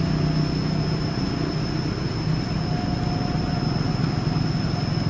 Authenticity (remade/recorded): recorded